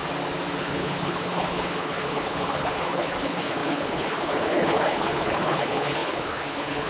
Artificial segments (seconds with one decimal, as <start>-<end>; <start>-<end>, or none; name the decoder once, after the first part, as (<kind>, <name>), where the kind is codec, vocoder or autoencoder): 0.6-6.9 (codec, HILCodec)